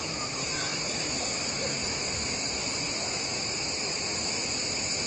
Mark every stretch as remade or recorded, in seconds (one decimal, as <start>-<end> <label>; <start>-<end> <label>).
0.0-5.1 remade